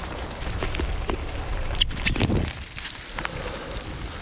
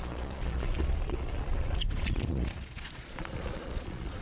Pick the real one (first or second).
first